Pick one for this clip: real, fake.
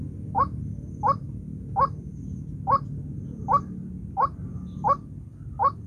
real